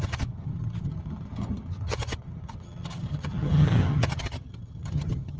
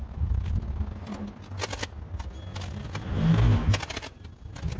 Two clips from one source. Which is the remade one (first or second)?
first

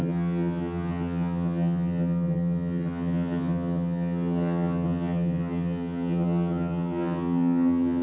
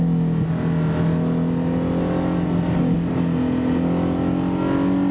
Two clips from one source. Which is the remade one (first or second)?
first